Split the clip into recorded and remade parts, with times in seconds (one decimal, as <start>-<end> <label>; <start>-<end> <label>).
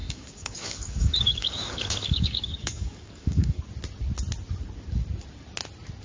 0.0-3.6 remade; 3.6-6.0 recorded